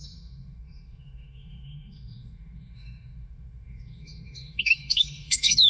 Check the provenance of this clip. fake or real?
fake